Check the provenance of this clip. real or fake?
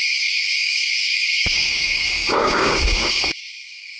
fake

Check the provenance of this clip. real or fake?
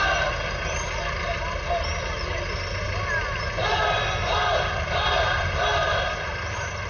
real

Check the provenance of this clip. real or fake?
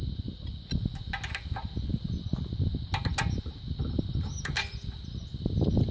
real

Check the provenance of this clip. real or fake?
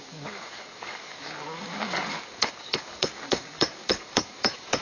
fake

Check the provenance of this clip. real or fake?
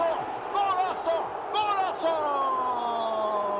real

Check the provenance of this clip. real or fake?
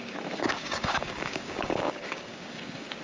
fake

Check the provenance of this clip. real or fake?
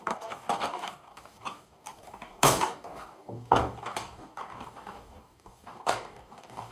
fake